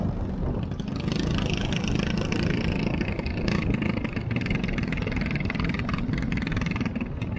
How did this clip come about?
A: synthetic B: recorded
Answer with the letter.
B